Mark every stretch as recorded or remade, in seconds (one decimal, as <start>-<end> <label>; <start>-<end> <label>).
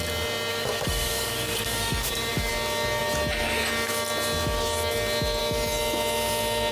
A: 0.0-0.5 recorded; 0.5-2.5 remade; 2.5-6.7 recorded